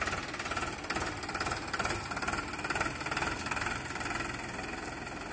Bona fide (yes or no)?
yes